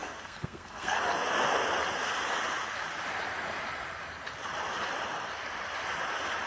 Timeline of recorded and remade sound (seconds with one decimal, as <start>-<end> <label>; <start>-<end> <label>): 0.0-1.0 remade; 1.0-6.5 recorded